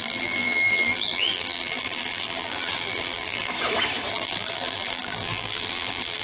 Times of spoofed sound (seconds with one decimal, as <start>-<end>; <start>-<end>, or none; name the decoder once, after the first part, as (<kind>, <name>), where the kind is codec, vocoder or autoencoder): 0.0-3.5 (vocoder, BigVGAN v2); 4.1-6.2